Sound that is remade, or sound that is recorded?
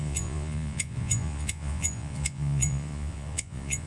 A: remade